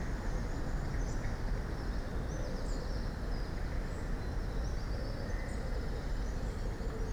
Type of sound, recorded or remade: recorded